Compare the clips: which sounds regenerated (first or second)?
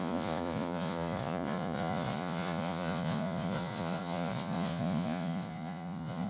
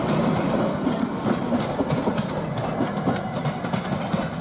first